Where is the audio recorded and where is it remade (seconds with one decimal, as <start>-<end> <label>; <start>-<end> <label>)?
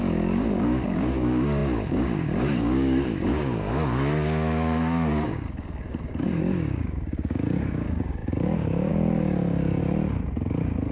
0.0-9.8 remade; 9.8-10.9 recorded